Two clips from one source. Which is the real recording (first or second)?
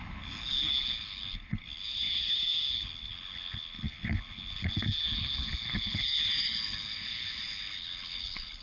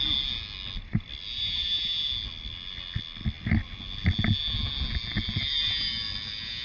second